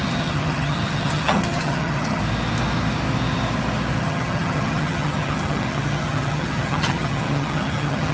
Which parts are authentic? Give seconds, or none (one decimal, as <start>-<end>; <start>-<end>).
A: 2.2-4.0